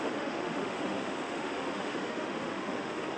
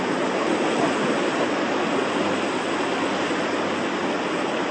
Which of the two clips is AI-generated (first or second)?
first